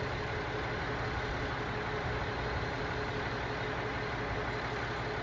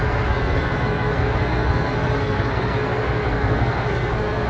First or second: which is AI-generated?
second